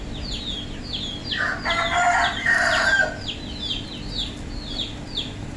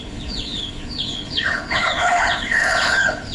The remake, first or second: second